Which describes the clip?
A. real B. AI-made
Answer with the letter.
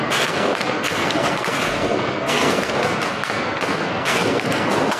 B